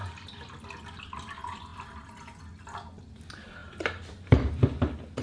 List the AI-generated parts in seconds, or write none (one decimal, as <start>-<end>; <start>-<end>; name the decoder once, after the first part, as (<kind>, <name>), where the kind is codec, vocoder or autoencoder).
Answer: 3.6-4.5 (vocoder, BigVGAN v2)

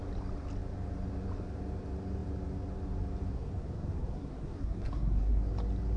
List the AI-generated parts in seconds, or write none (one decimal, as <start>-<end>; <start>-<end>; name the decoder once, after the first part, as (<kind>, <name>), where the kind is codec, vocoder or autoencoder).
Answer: 3.3-5.4 (codec, SNAC)

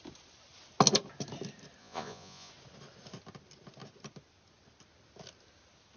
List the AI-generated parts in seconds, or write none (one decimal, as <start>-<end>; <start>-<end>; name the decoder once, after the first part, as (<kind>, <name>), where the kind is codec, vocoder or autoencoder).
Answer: 1.8-2.5 (vocoder, Vocos)

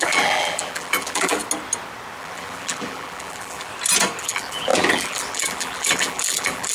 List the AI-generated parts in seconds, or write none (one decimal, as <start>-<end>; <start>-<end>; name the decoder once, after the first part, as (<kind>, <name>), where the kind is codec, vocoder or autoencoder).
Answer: 0.0-1.4 (vocoder, BigVGAN v2); 2.2-3.7; 4.2-6.7

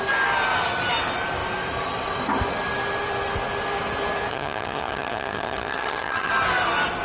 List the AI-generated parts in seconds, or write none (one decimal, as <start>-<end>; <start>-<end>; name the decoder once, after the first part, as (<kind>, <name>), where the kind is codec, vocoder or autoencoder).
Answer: 4.3-6.3 (vocoder, HiFi-GAN)

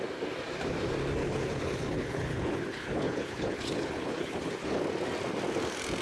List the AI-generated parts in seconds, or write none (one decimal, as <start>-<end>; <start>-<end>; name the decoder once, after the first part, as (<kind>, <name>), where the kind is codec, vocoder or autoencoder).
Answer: 1.2-4.8 (codec, HILCodec)

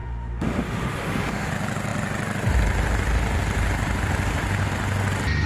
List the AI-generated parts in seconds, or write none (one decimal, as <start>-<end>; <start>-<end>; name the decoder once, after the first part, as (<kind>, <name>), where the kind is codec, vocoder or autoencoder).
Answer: 0.0-1.5 (autoencoder, DAC-VAE)

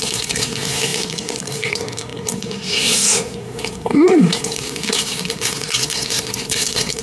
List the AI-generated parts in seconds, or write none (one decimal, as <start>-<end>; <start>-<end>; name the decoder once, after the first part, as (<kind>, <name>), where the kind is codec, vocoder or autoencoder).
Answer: 0.0-7.0 (codec, SNAC)